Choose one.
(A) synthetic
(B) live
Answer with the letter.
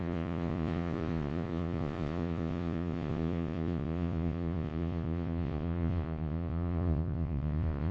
A